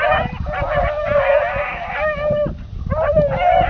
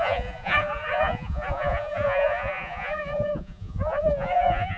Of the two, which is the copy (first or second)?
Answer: second